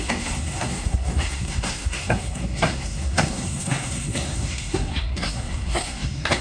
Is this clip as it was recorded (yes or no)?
no